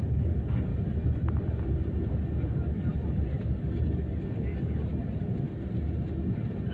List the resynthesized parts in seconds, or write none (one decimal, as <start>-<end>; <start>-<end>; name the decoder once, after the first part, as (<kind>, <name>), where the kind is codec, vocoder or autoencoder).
0.0-0.7 (codec, DAC); 2.1-2.9; 3.4-4.9

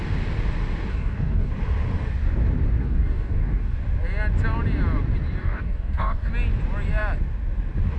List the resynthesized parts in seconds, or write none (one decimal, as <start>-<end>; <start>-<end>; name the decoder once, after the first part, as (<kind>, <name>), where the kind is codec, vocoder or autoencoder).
0.9-1.5 (codec, DAC); 2.8-3.8; 5.4-6.3

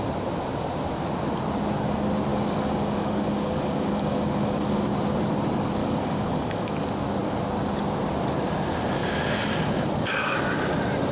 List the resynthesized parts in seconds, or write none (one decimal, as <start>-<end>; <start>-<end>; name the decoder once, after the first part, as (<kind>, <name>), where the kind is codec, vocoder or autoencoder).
2.3-4.8 (codec, DAC); 5.8-6.8

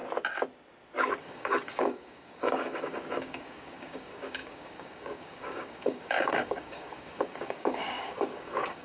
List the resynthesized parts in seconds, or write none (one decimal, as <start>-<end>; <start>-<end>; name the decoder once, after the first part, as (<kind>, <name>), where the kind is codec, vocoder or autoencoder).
1.2-8.8 (codec, DAC)